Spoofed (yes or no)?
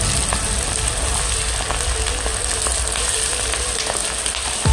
no